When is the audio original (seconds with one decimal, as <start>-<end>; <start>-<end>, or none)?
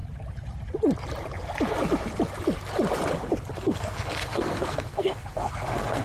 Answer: 0.0-3.6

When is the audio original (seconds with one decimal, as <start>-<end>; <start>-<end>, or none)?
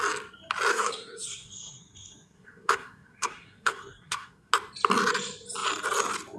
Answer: 0.0-0.7; 4.5-6.4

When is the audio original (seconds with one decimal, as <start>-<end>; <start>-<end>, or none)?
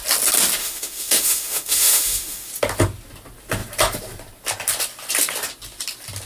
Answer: 0.0-0.6; 2.5-6.3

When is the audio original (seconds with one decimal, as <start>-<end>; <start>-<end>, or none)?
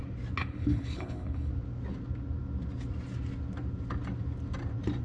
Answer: 0.0-0.4; 1.5-5.0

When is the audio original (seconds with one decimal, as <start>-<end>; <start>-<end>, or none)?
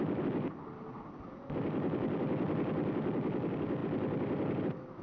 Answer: 0.0-3.8; 4.6-5.0